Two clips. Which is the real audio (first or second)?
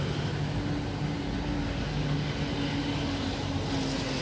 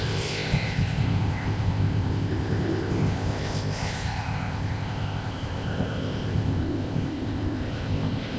first